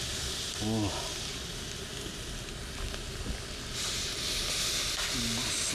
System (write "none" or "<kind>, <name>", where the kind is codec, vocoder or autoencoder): none